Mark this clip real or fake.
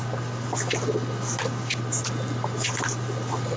real